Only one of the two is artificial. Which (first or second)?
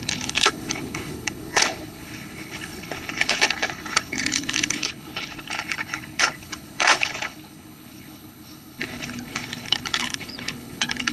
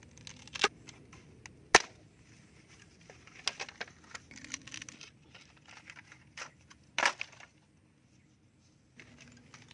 first